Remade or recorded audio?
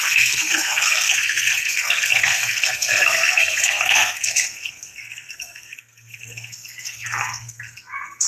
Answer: remade